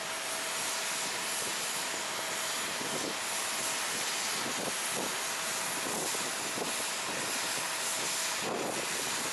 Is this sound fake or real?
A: real